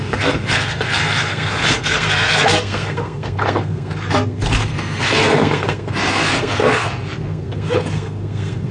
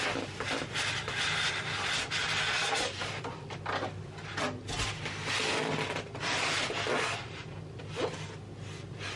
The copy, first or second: first